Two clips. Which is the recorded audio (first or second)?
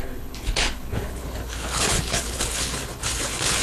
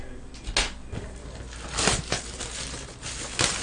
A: second